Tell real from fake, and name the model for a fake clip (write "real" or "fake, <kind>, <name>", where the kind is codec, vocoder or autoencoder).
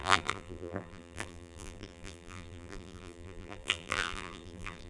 fake, vocoder, BigVGAN v2